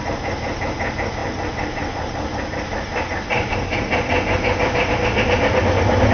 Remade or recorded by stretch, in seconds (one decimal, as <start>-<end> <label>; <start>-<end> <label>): 0.0-6.1 recorded